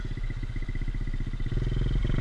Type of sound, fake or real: real